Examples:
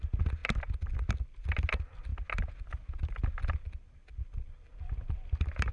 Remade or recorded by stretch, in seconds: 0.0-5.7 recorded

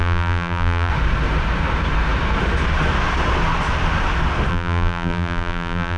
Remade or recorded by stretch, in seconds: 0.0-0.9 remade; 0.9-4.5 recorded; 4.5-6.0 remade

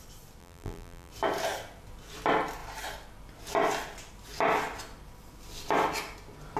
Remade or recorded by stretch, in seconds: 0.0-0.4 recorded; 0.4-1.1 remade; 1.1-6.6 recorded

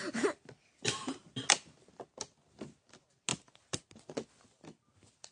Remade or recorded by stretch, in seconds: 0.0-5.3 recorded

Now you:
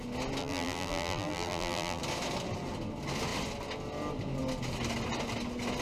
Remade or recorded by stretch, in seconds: 0.0-0.4 recorded; 0.4-2.0 remade; 2.0-5.8 recorded

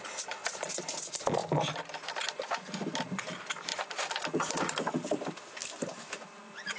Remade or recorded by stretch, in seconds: 0.0-1.4 remade; 1.4-2.1 recorded; 2.1-3.7 remade; 3.7-4.5 recorded; 4.5-6.8 remade